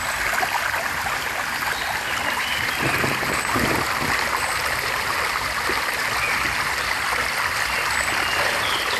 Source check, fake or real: real